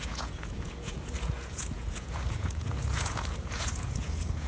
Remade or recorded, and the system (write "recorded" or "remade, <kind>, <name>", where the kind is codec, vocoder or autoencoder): remade, vocoder, Vocos